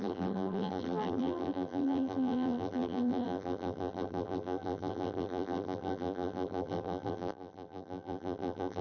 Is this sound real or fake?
fake